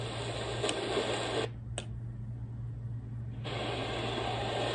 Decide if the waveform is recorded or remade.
recorded